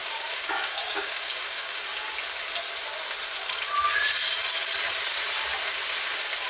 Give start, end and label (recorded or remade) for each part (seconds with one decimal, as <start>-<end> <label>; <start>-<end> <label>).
0.0-1.8 remade; 1.8-6.5 recorded